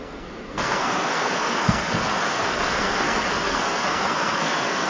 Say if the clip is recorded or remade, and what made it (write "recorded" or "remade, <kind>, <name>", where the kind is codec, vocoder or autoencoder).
remade, codec, SNAC